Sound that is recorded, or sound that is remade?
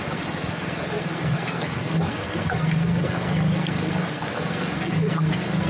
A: remade